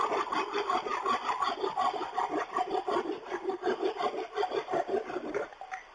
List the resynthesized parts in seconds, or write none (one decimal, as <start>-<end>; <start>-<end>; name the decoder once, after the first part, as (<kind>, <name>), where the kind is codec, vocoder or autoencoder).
none